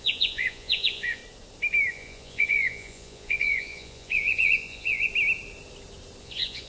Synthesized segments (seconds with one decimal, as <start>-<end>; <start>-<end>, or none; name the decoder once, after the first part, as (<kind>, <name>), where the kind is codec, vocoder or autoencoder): 0.0-1.2 (vocoder, Vocos); 1.9-5.1; 6.2-6.7

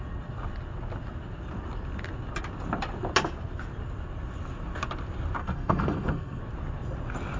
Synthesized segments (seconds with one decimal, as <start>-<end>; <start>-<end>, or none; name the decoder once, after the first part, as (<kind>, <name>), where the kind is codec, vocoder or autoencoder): 5.4-6.4 (codec, SNAC)

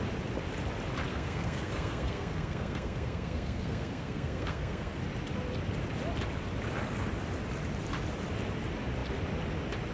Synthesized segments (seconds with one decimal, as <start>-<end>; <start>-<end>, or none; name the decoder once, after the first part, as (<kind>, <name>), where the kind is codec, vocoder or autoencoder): 1.1-5.0 (codec, SNAC)

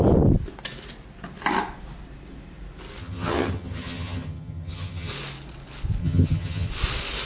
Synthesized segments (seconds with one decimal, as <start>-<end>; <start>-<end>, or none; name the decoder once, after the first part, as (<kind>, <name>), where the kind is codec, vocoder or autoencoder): 3.0-5.1 (vocoder, HiFi-GAN); 6.0-6.7

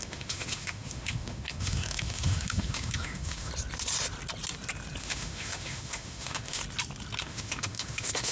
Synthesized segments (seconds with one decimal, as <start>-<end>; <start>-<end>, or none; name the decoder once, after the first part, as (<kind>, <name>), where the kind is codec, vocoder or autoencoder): 0.0-3.5 (autoencoder, DAC-VAE); 5.0-6.6; 7.2-8.3

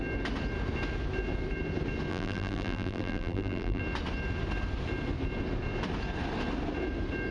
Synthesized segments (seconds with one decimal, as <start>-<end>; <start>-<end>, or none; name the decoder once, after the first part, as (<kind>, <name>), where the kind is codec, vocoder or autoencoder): 2.1-3.8 (vocoder, BigVGAN v2)

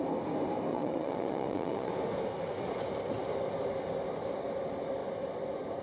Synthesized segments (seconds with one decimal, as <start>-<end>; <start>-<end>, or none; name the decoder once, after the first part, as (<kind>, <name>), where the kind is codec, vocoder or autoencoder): 0.7-1.9 (vocoder, Vocos)